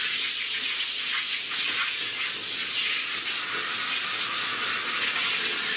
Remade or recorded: recorded